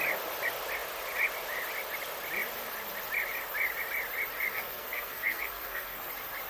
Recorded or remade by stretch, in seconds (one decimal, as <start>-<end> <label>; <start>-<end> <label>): 0.0-4.5 recorded; 4.5-6.1 remade; 6.1-6.5 recorded